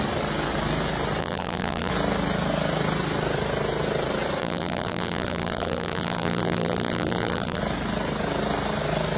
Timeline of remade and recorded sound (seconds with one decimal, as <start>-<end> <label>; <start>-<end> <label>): 0.0-1.2 recorded; 1.2-1.9 remade; 1.9-4.4 recorded; 4.4-7.6 remade; 7.6-9.2 recorded